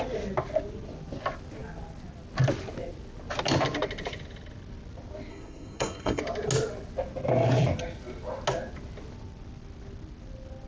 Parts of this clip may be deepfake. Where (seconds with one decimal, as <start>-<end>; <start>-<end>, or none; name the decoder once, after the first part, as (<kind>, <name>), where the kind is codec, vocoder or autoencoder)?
5.3-6.2 (codec, SNAC)